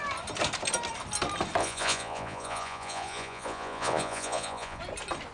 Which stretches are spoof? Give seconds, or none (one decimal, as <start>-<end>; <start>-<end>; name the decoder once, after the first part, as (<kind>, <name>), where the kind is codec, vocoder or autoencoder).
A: 1.6-4.8 (vocoder, Vocos)